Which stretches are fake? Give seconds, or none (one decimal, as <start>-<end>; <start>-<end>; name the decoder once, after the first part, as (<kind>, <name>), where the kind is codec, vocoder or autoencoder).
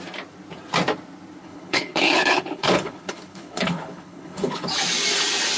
1.4-4.7 (codec, HILCodec)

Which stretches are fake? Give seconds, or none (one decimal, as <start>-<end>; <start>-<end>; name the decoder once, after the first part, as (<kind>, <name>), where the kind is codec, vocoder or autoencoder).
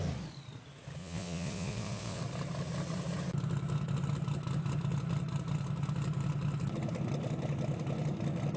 1.0-2.2 (vocoder, Vocos)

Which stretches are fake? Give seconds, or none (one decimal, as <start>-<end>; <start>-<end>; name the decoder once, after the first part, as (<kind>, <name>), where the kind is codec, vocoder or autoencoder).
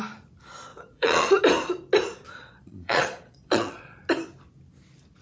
0.7-1.4 (vocoder, Vocos); 2.4-4.0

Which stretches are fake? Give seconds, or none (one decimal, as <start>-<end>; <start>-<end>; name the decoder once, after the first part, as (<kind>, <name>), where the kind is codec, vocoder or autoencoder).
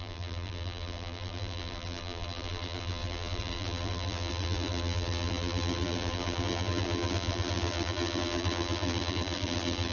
0.0-9.9 (vocoder, BigVGAN v2)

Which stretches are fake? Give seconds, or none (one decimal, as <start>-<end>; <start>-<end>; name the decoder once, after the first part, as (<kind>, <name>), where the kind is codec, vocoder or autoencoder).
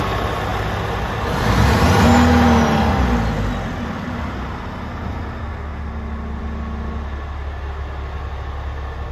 none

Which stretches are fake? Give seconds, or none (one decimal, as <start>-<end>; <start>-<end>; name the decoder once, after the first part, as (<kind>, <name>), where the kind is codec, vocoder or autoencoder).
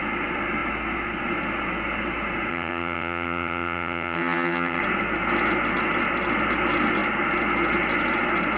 2.5-4.8 (vocoder, HiFi-GAN)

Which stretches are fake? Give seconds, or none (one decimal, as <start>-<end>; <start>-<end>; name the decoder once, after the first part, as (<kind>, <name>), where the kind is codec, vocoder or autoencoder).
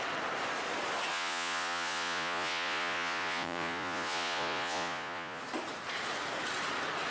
1.1-5.4 (vocoder, Vocos)